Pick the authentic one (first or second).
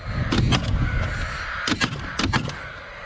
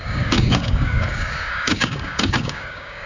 first